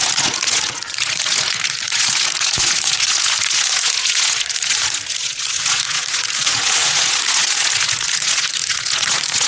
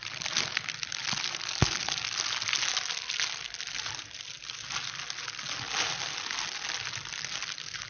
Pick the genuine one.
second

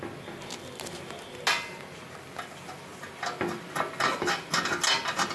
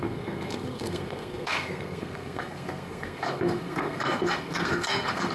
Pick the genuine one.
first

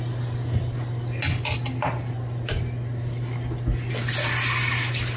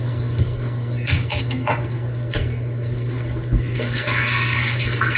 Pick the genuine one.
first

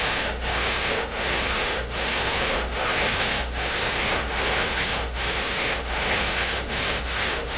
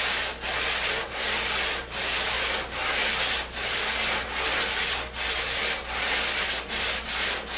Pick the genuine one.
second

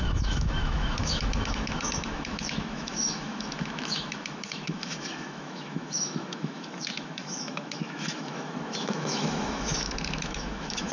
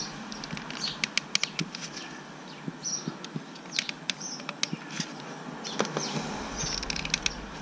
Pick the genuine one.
second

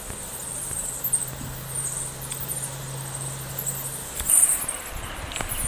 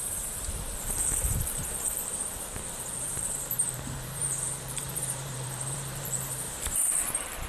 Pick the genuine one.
first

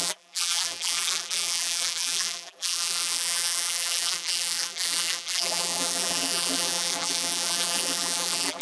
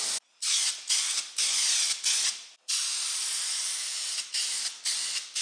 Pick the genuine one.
second